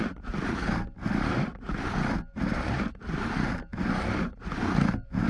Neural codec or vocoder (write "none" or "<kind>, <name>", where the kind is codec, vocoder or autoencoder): none